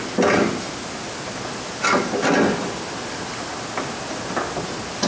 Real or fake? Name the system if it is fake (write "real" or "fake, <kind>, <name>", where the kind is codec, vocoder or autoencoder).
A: real